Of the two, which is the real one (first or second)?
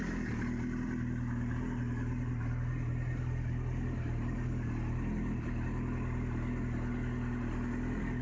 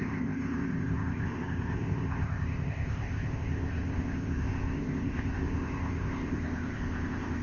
first